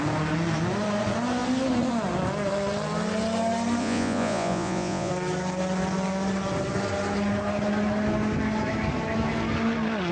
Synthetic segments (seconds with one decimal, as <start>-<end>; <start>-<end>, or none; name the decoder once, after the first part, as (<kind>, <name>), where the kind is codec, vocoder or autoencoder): 3.8-5.1 (vocoder, Vocos)